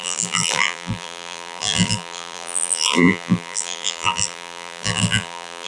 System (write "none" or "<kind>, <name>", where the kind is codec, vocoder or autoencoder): vocoder, BigVGAN v2